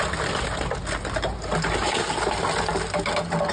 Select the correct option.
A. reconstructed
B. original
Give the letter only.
B